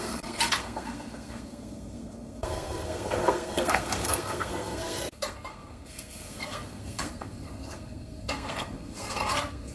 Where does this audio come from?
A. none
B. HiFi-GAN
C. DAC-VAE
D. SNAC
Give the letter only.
D